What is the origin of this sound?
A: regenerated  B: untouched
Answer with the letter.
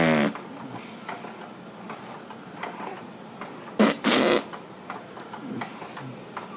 B